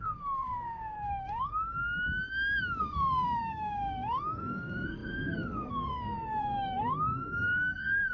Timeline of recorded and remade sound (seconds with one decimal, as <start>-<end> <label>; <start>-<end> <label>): 0.0-1.5 remade; 1.5-2.8 recorded; 2.8-8.1 remade